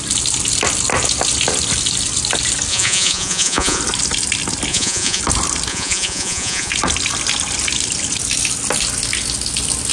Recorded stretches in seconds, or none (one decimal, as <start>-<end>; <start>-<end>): 0.0-2.7; 3.8-4.7; 5.2-5.7; 6.7-9.9